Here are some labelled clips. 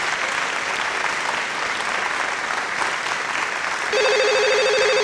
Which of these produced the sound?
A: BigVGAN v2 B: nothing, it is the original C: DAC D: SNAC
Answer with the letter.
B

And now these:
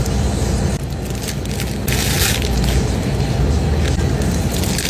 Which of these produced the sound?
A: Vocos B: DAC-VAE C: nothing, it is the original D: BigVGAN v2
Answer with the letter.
C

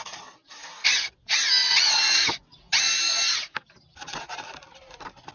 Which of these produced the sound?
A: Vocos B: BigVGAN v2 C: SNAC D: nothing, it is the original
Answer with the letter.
D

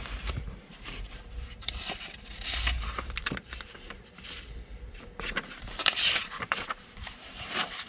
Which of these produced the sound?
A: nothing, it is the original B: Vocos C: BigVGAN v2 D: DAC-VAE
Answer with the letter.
C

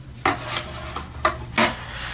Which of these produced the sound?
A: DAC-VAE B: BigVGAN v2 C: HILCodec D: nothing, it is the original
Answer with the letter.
D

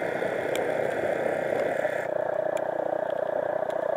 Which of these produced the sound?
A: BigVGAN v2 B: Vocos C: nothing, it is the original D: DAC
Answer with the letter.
A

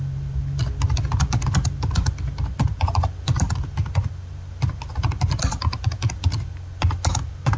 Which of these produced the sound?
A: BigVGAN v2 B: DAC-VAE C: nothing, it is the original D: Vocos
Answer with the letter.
C